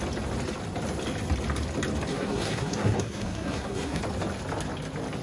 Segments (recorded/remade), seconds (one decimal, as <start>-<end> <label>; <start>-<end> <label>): 0.0-2.1 recorded; 2.1-4.0 remade; 4.0-5.2 recorded